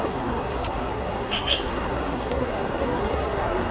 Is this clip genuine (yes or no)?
no